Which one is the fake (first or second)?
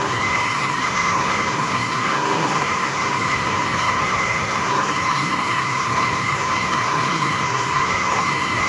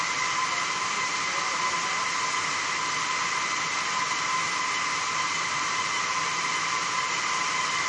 first